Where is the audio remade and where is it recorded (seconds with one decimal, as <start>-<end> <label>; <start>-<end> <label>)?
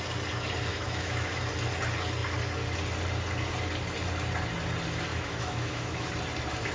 0.0-0.7 recorded; 0.7-1.4 remade; 1.4-5.1 recorded; 5.1-6.1 remade; 6.1-6.7 recorded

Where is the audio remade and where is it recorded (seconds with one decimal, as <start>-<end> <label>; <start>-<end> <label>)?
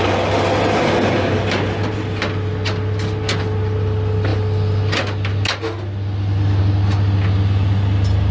0.0-8.3 recorded